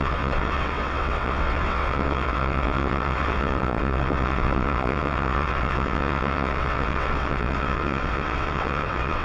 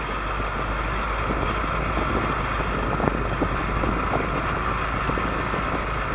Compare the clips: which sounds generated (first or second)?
first